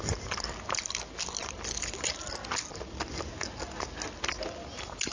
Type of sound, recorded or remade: recorded